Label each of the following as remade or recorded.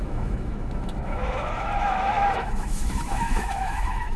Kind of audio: remade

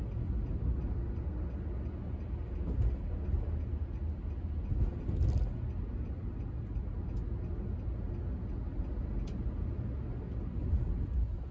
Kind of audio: recorded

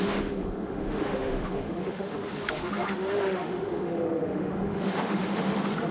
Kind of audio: remade